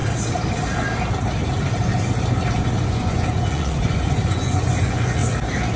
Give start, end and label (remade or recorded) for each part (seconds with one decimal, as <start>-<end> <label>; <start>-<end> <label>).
0.0-2.8 recorded; 2.8-5.2 remade; 5.2-5.8 recorded